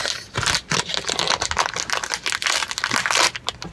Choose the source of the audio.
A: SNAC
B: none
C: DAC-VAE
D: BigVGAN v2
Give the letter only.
B